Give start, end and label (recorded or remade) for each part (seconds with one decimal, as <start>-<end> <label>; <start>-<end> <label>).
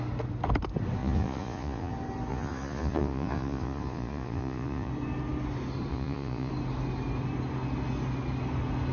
0.0-1.0 recorded; 1.0-1.9 remade; 1.9-2.3 recorded; 2.3-4.9 remade; 4.9-5.9 recorded; 5.9-6.5 remade; 6.5-8.9 recorded